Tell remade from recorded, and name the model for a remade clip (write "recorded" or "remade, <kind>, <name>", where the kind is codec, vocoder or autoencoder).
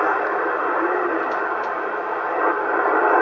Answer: recorded